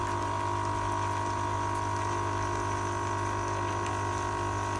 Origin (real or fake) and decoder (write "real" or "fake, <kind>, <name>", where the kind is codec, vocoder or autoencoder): real